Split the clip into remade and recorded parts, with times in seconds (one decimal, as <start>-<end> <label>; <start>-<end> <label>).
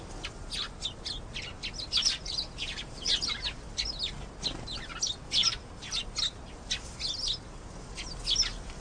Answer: 0.0-2.2 recorded; 2.2-3.1 remade; 3.1-8.8 recorded